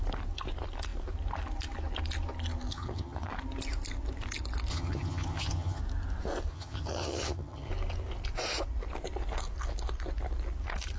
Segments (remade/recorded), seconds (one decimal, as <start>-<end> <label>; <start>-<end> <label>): 0.0-2.7 recorded; 2.7-3.3 remade; 3.3-4.7 recorded; 4.7-5.8 remade; 5.8-6.5 recorded; 6.5-7.7 remade; 7.7-11.0 recorded